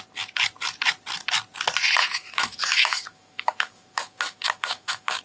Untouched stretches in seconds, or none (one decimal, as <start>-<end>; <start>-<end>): 0.0-2.0